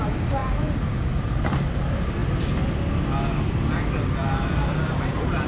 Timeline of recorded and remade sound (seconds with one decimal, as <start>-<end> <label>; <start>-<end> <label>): 0.0-0.4 recorded; 0.4-1.4 remade; 1.4-4.2 recorded; 4.2-5.5 remade